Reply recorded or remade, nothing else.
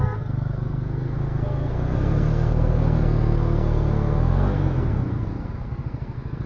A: remade